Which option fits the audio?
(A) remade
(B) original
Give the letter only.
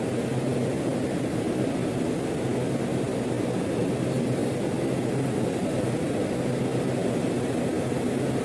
B